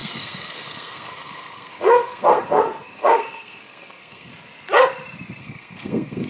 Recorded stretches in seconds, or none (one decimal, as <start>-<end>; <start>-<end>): 4.3-5.4